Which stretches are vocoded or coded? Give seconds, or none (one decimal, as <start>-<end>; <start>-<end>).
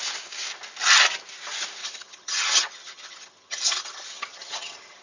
1.8-5.0